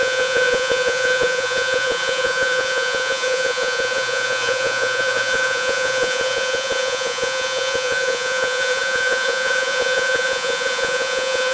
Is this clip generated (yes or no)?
yes